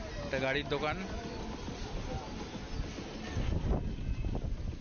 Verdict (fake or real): real